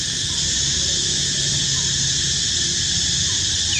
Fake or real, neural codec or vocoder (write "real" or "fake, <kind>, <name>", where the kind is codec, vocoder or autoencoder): real